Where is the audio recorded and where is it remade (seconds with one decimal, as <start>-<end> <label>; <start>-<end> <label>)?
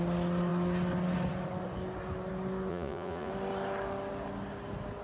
0.0-2.7 recorded; 2.7-3.3 remade; 3.3-5.0 recorded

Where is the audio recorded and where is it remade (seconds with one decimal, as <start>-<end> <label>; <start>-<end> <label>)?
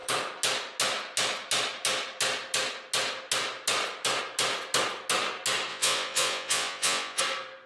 0.0-5.7 recorded; 5.7-7.2 remade; 7.2-7.7 recorded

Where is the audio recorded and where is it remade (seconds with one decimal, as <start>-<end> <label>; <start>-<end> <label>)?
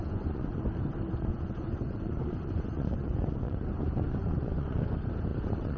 0.0-0.6 remade; 0.6-1.3 recorded; 1.3-4.8 remade; 4.8-5.3 recorded; 5.3-5.8 remade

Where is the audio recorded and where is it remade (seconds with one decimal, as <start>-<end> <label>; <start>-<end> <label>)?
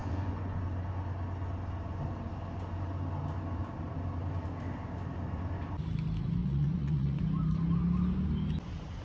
0.0-0.6 remade; 0.6-6.4 recorded; 6.4-7.2 remade; 7.2-9.0 recorded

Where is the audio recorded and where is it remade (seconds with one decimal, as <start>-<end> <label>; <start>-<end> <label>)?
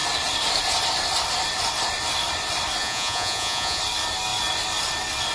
0.0-2.8 recorded; 2.8-3.8 remade; 3.8-5.3 recorded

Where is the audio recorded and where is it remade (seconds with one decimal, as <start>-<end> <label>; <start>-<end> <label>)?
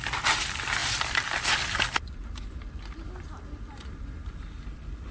0.0-5.1 recorded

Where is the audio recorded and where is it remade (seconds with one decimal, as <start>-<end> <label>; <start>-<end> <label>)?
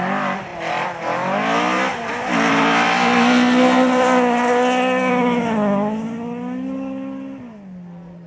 0.0-8.3 recorded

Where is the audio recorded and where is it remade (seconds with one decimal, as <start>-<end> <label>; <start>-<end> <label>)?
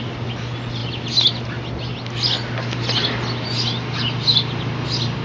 0.0-5.2 recorded